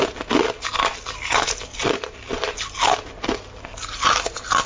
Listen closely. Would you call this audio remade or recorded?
recorded